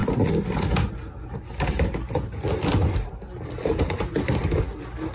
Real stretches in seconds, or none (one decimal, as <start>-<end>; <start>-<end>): 0.0-5.1